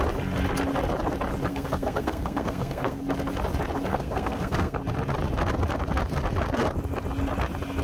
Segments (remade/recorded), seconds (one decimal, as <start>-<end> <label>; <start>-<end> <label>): 0.0-1.5 recorded; 1.5-3.0 remade; 3.0-3.9 recorded; 3.9-4.8 remade; 4.8-7.8 recorded